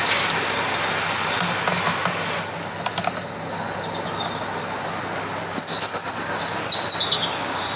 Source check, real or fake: real